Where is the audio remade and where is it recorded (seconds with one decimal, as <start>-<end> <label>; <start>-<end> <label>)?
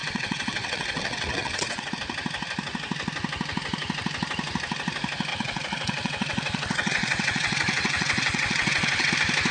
0.0-1.9 remade; 1.9-5.3 recorded; 5.3-9.1 remade; 9.1-9.5 recorded